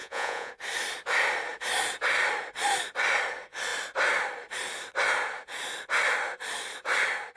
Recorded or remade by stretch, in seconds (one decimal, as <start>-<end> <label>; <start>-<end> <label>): 0.0-0.5 remade; 0.5-7.4 recorded